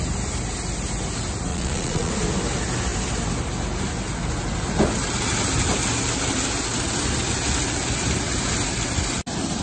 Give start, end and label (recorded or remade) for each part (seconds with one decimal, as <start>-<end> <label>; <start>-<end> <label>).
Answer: 0.0-1.5 recorded; 1.5-2.1 remade; 2.1-9.6 recorded